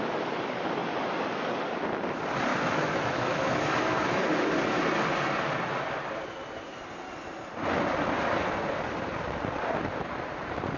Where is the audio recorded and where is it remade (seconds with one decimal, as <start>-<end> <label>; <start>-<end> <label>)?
0.0-2.5 recorded; 2.5-4.5 remade; 4.5-10.8 recorded